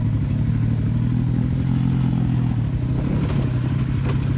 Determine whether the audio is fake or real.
real